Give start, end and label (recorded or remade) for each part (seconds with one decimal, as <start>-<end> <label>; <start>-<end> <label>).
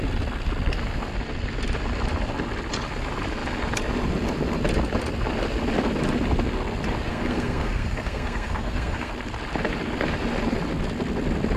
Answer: 0.0-7.1 recorded; 7.1-9.1 remade; 9.1-11.6 recorded